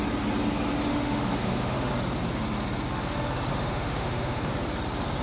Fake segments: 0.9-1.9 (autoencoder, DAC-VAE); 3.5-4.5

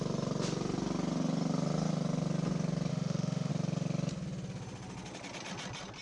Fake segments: 2.9-3.5 (autoencoder, DAC-VAE)